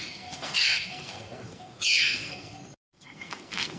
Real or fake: fake